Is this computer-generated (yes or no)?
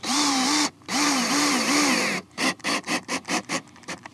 yes